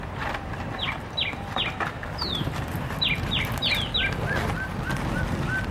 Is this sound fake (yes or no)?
no